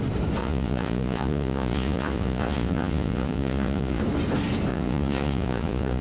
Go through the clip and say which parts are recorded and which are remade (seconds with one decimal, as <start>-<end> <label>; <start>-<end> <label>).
0.0-0.4 recorded; 0.4-4.0 remade; 4.0-4.7 recorded; 4.7-6.0 remade